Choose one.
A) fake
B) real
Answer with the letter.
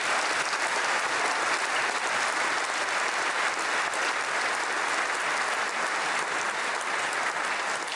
B